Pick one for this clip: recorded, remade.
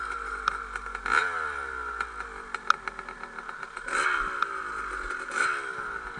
recorded